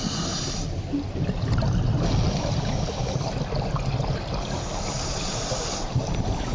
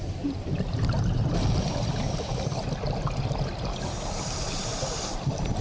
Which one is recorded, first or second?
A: first